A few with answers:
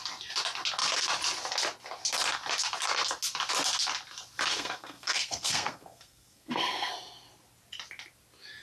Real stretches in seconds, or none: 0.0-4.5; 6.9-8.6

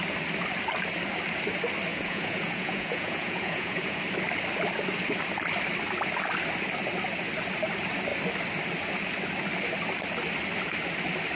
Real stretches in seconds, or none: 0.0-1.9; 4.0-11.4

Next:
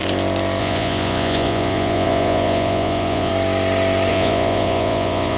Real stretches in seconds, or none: 0.0-0.6; 3.3-4.1

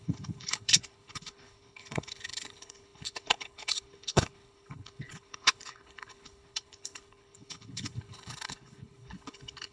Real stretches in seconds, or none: none